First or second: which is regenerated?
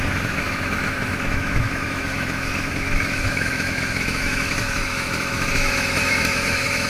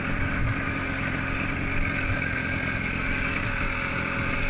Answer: first